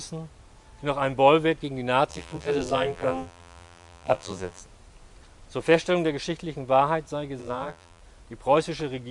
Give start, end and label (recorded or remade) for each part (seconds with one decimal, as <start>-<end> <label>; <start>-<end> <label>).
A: 0.0-2.1 recorded; 2.1-4.6 remade; 4.6-7.4 recorded; 7.4-8.0 remade; 8.0-9.1 recorded